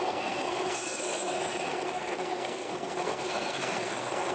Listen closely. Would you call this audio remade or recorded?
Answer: remade